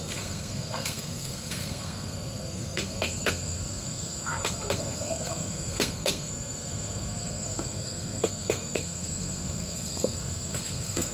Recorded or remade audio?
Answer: remade